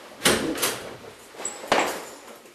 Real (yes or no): yes